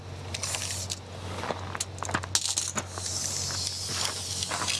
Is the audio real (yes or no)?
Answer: yes